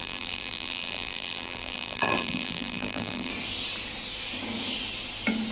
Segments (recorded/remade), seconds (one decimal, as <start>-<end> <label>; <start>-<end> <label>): 0.0-3.3 remade; 3.3-5.5 recorded